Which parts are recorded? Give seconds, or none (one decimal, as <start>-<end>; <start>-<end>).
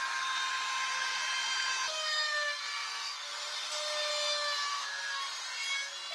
0.0-1.9; 3.3-4.7; 5.2-6.1